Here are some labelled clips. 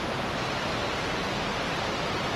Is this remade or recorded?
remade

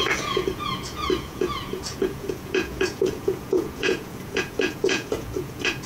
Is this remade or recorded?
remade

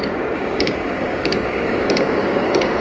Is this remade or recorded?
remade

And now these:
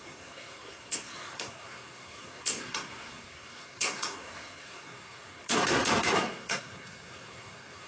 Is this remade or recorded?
remade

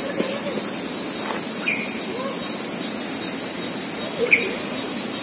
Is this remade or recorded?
recorded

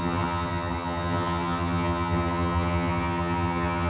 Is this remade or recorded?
remade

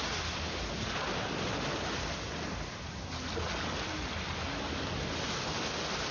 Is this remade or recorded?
recorded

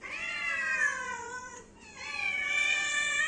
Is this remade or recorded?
remade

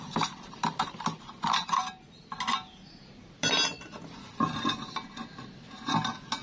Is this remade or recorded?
recorded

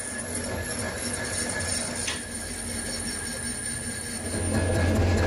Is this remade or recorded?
recorded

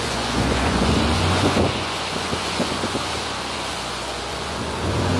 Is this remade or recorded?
remade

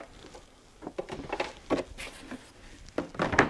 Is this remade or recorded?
recorded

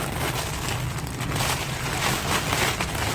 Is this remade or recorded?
recorded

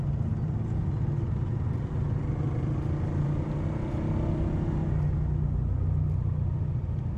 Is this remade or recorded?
recorded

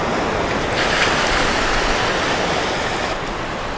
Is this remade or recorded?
recorded